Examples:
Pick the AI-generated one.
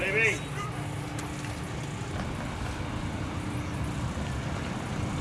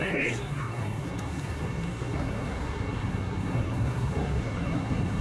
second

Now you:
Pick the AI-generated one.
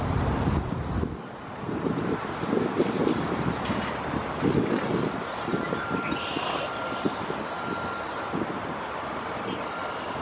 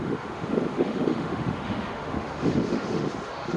second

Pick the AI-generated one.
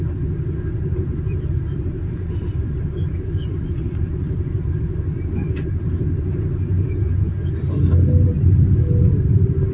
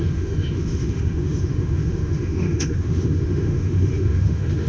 second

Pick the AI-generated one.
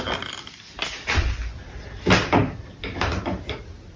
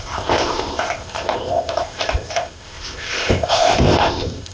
second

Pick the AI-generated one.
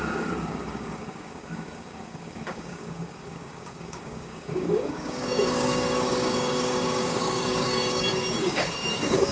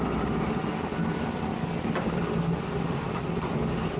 first